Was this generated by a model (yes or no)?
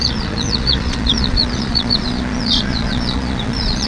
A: yes